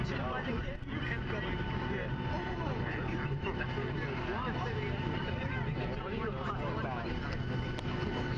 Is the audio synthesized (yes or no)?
no